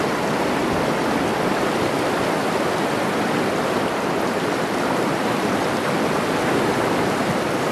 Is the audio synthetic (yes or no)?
no